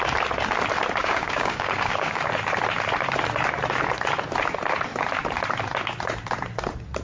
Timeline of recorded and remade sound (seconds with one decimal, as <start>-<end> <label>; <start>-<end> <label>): 0.0-1.0 recorded; 1.0-2.2 remade; 2.2-7.0 recorded